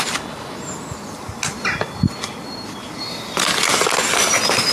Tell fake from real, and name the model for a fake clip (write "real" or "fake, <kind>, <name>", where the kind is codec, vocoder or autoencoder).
real